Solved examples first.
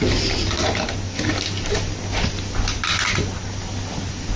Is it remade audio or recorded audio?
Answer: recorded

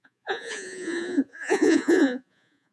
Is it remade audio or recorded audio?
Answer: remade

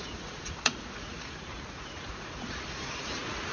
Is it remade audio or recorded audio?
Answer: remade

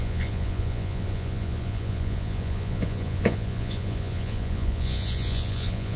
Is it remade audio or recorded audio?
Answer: remade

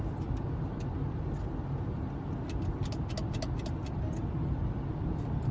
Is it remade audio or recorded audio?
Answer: recorded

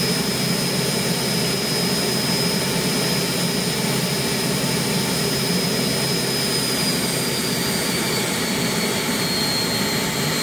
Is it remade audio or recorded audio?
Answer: recorded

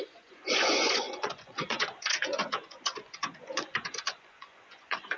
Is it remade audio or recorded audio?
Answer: remade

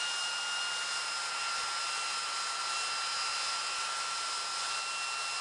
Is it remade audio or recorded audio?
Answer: recorded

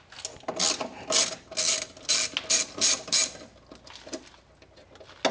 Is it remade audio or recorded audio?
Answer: recorded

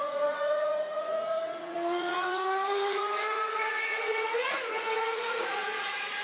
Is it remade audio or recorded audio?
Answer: remade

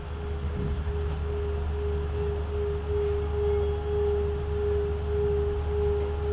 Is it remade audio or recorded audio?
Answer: recorded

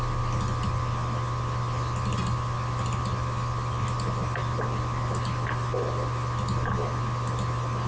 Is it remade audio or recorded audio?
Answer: recorded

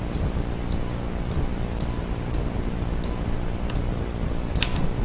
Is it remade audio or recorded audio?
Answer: recorded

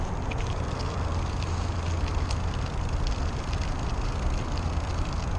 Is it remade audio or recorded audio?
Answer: recorded